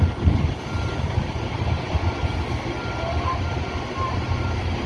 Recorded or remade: recorded